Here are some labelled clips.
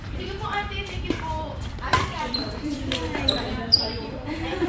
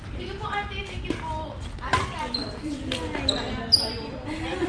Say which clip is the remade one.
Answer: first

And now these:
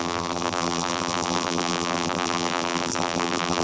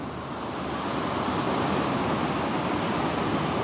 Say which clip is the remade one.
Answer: first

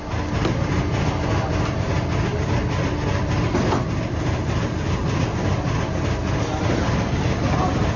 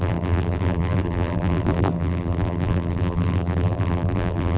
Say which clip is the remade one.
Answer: second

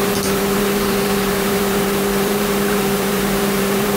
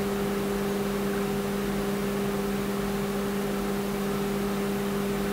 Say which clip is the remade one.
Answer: first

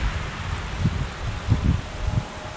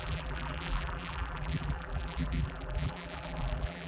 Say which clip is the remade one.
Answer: second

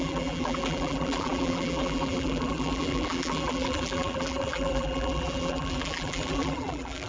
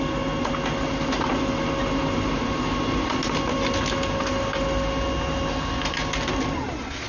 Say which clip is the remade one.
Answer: first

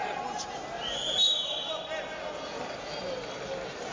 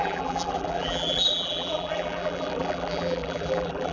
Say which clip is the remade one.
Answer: second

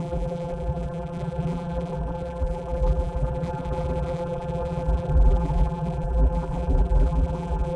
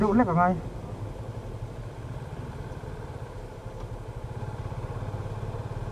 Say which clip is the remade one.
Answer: first